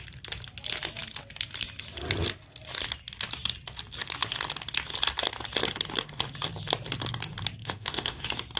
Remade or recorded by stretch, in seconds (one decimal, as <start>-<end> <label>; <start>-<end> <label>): 0.0-7.6 recorded; 7.6-8.2 remade; 8.2-8.6 recorded